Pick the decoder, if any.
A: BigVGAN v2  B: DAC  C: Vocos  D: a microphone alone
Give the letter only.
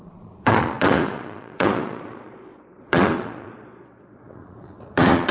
C